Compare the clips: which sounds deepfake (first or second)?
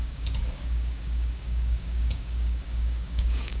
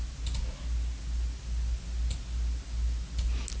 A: first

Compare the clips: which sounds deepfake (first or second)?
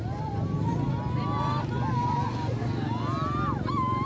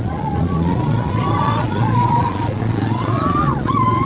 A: second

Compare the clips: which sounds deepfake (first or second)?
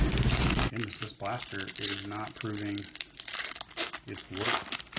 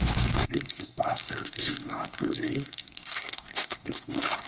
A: second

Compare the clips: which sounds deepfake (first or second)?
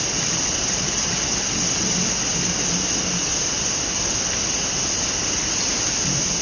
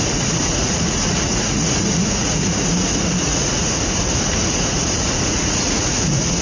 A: second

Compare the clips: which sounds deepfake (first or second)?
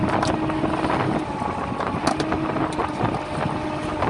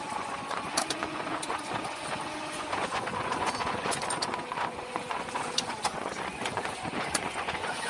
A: second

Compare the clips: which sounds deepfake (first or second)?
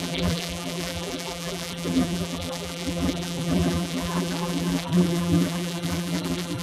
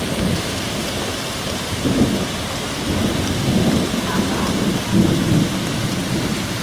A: first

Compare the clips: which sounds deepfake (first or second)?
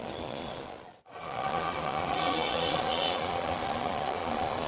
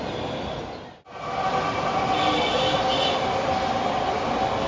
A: first